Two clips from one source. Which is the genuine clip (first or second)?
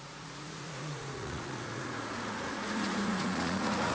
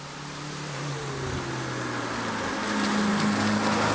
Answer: second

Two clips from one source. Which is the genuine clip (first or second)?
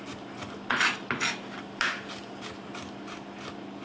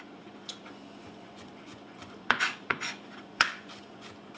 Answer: first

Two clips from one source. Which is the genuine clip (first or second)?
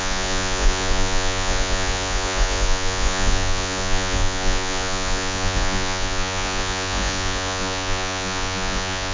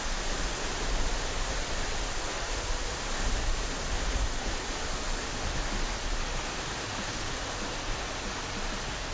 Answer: second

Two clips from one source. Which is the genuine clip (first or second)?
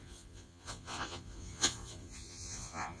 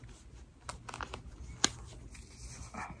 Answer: second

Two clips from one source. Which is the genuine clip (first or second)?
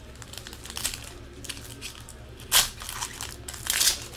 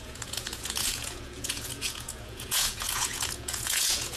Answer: first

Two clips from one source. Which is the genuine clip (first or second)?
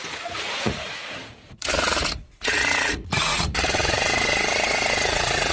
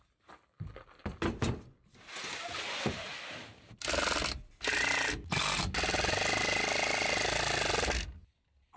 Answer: second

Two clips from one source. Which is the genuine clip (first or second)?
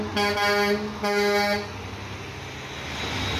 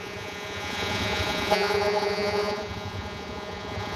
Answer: first